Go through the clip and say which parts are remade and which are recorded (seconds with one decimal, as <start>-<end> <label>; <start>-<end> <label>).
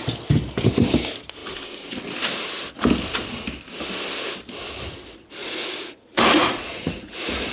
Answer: 0.0-5.4 recorded; 5.4-7.5 remade